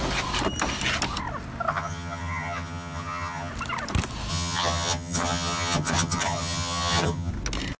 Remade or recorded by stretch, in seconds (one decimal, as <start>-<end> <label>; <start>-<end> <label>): 0.0-1.7 recorded; 1.7-3.5 remade; 3.5-4.3 recorded; 4.3-7.3 remade; 7.3-7.8 recorded